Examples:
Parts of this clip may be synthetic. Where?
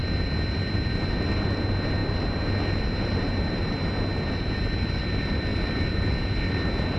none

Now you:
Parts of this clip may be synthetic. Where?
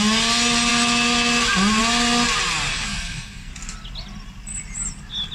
2.7-3.5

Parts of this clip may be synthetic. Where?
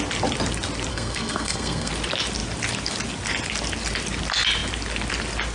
0.9-1.9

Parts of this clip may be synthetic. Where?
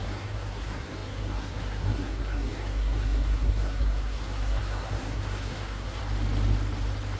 0.0-6.0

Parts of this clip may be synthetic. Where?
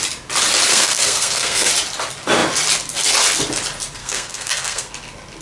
0.7-1.7; 4.0-4.9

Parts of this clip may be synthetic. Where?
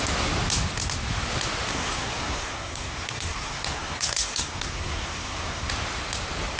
1.7-5.7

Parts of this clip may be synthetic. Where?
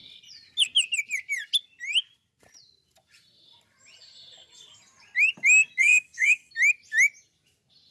5.8-6.5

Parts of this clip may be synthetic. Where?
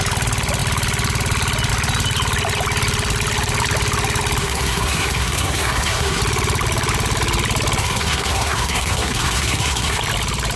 4.4-6.2; 7.8-10.0